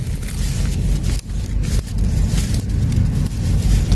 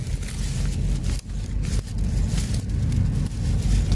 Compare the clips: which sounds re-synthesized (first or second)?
first